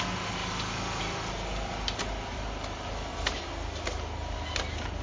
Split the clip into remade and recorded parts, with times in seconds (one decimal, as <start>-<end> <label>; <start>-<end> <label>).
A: 0.0-5.0 recorded